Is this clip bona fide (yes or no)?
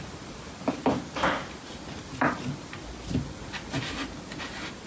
yes